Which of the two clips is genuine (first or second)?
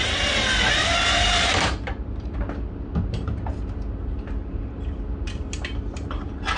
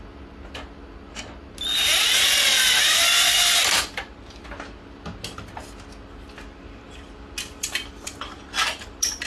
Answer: second